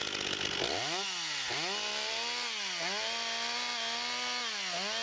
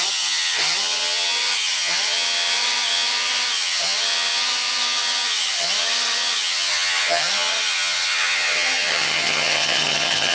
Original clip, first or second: first